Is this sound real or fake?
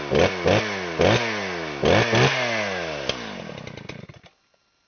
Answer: real